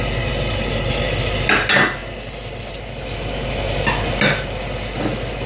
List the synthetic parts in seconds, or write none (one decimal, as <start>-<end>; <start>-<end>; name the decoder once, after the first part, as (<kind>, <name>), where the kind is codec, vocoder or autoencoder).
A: none